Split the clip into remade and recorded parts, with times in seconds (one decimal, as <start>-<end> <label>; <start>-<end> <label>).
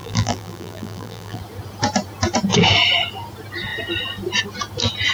0.0-1.4 remade; 1.4-5.1 recorded